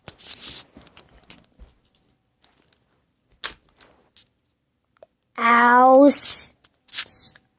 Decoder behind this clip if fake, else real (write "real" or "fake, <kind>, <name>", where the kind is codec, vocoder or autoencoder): real